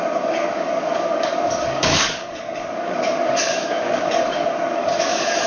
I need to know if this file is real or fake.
fake